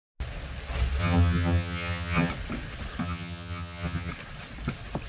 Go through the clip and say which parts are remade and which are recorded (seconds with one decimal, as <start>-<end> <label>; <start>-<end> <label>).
0.0-1.0 recorded; 1.0-2.3 remade; 2.3-3.0 recorded; 3.0-4.1 remade; 4.1-5.1 recorded